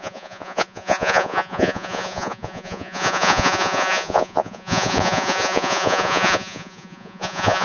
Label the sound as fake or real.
fake